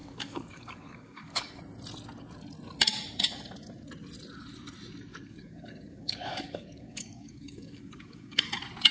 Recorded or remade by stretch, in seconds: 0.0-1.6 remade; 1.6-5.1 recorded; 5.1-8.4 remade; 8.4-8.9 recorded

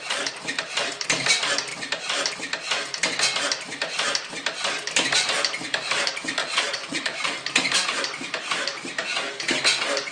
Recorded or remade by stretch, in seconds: 0.0-6.4 recorded; 6.4-7.3 remade; 7.3-10.1 recorded